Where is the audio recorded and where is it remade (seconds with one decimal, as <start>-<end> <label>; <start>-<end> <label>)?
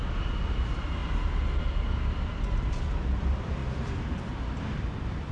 0.0-5.3 remade